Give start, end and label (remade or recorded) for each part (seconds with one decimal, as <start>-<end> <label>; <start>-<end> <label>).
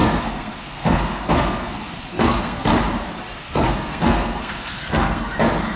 0.0-2.7 remade; 2.7-3.4 recorded; 3.4-5.8 remade